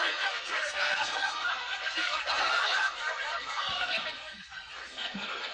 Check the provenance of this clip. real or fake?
fake